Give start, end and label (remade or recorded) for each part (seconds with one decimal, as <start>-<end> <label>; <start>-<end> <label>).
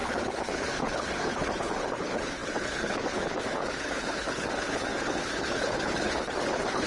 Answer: 0.0-6.9 remade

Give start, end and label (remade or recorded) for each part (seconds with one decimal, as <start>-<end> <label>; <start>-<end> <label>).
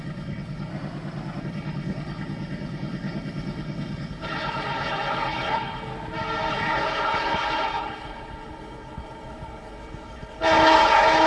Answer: 0.0-0.7 remade; 0.7-1.4 recorded; 1.4-5.9 remade; 5.9-6.5 recorded; 6.5-11.3 remade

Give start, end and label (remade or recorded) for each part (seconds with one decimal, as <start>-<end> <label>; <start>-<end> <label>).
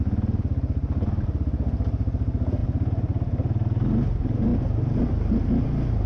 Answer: 0.0-6.1 recorded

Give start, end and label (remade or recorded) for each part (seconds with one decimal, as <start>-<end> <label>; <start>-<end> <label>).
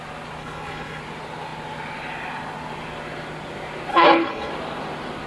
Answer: 0.0-0.4 recorded; 0.4-1.0 remade; 1.0-3.9 recorded; 3.9-4.5 remade; 4.5-5.3 recorded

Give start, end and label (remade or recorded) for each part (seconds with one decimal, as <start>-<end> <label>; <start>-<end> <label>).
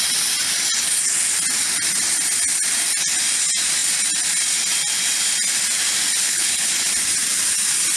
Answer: 0.0-6.2 recorded; 6.2-6.7 remade; 6.7-8.0 recorded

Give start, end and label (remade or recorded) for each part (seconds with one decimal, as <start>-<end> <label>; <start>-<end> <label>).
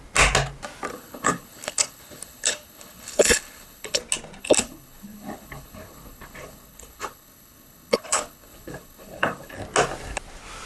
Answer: 0.0-0.9 recorded; 0.9-4.0 remade; 4.0-4.4 recorded; 4.4-9.5 remade; 9.5-10.7 recorded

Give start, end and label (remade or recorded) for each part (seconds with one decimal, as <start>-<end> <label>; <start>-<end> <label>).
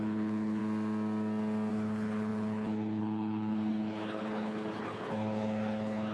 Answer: 0.0-0.6 remade; 0.6-1.7 recorded; 1.7-6.1 remade